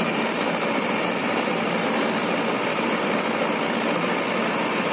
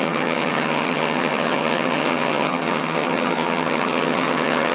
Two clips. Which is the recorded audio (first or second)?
first